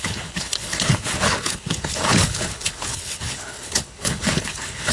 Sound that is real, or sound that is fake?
fake